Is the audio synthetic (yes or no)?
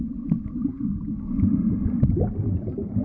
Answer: no